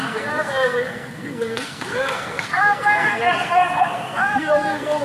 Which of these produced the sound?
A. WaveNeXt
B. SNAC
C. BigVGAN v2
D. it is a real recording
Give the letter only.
B